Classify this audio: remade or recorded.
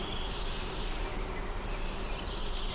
recorded